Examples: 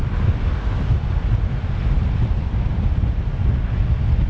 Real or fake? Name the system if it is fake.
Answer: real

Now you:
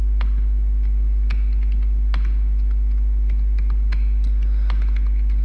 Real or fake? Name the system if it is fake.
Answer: real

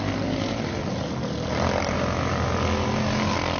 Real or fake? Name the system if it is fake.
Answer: real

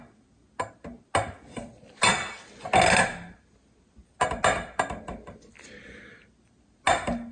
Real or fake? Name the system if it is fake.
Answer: real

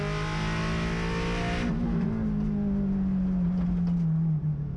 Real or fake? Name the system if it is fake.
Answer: real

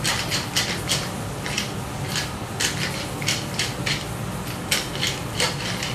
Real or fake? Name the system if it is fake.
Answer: real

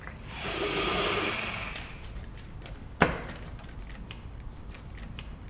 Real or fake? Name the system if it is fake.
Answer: real